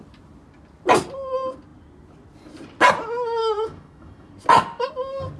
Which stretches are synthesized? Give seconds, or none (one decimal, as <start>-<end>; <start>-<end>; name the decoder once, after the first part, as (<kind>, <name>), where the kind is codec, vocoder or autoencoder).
3.4-4.3 (autoencoder, DAC-VAE)